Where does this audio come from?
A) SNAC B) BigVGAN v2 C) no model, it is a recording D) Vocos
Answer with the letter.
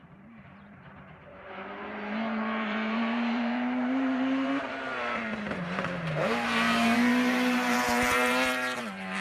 B